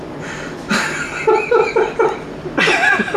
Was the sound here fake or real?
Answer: real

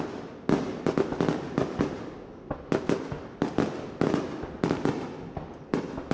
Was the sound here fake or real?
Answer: real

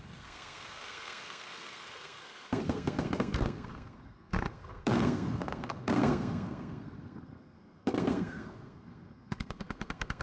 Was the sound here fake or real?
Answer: fake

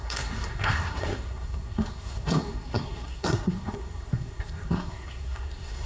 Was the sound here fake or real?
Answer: fake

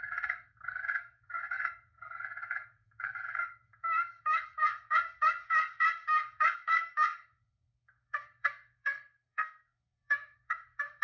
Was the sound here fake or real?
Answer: fake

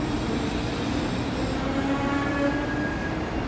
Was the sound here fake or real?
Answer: real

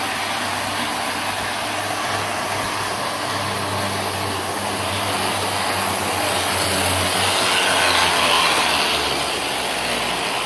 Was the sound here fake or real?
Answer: real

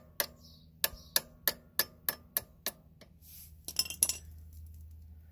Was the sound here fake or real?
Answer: real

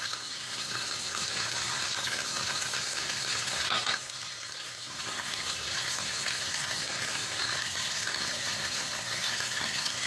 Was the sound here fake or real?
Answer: fake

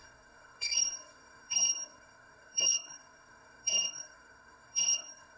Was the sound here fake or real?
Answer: fake